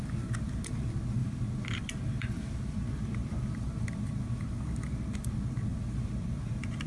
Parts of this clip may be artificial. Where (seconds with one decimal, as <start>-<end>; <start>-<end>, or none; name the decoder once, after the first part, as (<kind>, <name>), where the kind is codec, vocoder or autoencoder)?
1.2-3.4 (vocoder, BigVGAN v2)